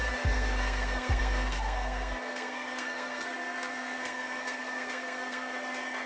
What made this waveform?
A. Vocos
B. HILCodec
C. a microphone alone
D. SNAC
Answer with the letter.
D